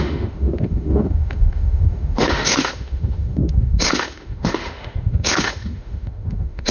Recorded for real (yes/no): no